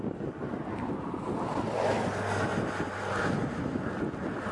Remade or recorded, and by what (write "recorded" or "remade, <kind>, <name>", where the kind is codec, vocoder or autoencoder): recorded